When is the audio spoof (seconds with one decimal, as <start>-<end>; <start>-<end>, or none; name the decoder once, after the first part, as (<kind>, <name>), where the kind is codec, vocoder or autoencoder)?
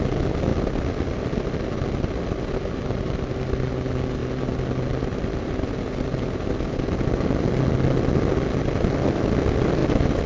none